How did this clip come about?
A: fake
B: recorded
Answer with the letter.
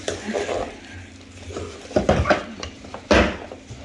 B